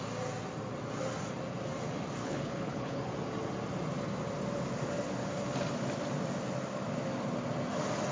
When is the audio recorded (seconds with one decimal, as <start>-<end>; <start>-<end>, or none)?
0.0-2.2; 3.1-8.1